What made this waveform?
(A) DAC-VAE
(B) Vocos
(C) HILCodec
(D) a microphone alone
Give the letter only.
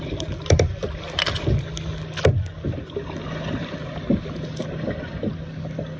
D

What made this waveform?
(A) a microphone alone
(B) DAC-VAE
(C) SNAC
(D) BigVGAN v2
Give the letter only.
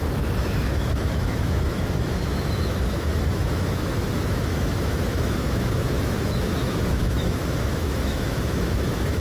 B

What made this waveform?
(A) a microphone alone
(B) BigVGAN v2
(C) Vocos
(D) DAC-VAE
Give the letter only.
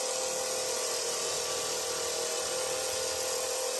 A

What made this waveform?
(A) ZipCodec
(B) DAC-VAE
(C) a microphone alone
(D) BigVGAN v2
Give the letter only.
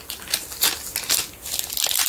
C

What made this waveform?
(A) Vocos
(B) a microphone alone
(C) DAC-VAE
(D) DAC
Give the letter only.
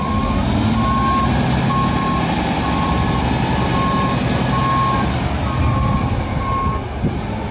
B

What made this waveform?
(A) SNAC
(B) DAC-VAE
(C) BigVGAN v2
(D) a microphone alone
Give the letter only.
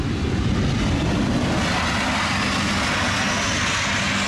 D